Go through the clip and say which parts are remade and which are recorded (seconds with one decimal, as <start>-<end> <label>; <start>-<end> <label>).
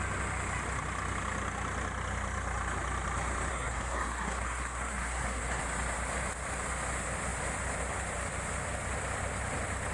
0.0-3.5 recorded; 3.5-5.6 remade; 5.6-9.9 recorded